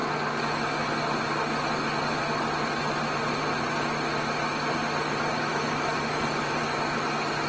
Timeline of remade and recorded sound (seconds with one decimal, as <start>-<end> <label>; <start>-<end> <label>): 0.0-5.5 recorded; 5.5-6.8 remade; 6.8-7.5 recorded